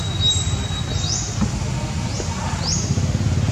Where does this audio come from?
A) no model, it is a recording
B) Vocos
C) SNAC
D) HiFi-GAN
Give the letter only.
A